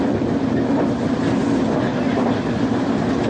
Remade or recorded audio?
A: recorded